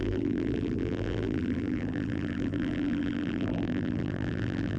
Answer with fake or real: fake